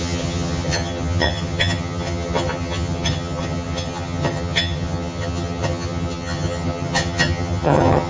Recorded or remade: remade